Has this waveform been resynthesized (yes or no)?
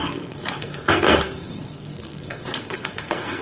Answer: yes